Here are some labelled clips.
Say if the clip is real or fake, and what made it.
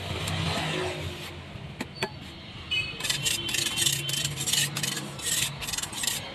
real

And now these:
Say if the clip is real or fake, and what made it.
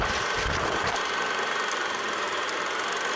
real